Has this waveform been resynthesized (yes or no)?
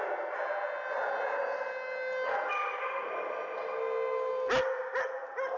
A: no